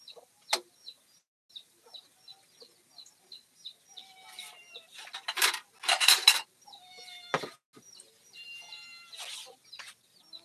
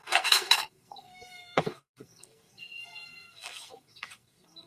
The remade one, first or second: second